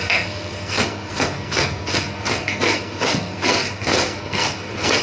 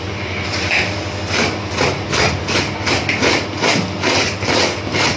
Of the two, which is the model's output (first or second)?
first